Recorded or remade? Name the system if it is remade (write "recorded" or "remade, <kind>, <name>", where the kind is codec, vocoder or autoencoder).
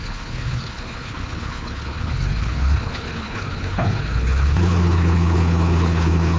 remade, codec, HILCodec